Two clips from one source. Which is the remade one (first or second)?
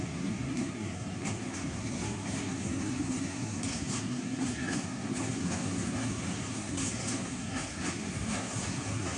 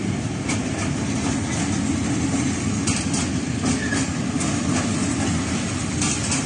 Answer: first